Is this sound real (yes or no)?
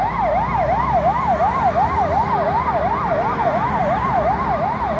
yes